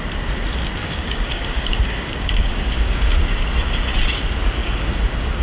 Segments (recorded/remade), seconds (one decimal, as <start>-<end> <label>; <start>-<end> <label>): 0.0-0.8 recorded; 0.8-3.2 remade; 3.2-4.6 recorded; 4.6-5.4 remade